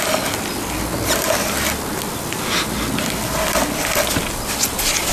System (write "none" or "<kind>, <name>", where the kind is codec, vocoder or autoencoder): none